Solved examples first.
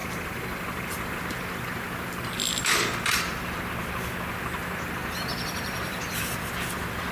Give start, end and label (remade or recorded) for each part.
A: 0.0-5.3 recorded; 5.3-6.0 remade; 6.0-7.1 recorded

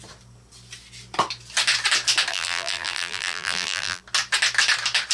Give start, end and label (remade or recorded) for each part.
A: 0.0-2.3 recorded; 2.3-4.0 remade; 4.0-5.1 recorded

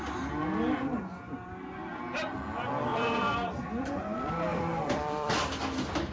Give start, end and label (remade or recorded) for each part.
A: 0.0-2.9 recorded; 2.9-3.9 remade; 3.9-4.5 recorded; 4.5-5.3 remade; 5.3-6.1 recorded

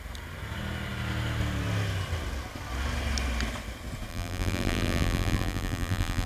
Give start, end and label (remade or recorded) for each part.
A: 0.0-4.1 recorded; 4.1-6.3 remade

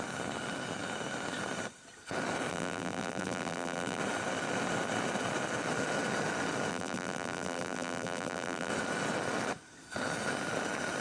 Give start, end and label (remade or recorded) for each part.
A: 0.0-2.5 recorded; 2.5-4.0 remade; 4.0-6.7 recorded; 6.7-8.7 remade; 8.7-11.0 recorded

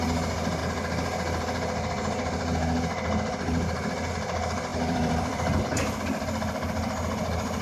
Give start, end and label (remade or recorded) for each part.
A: 0.0-4.7 recorded; 4.7-5.6 remade; 5.6-7.6 recorded

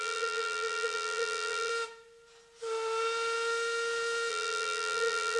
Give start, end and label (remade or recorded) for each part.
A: 0.0-1.7 remade; 1.7-4.3 recorded; 4.3-5.4 remade